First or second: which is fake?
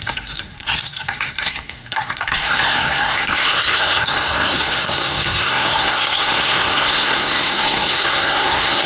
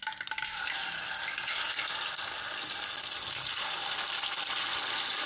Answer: first